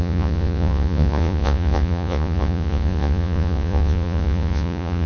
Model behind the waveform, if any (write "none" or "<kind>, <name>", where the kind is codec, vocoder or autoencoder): vocoder, Vocos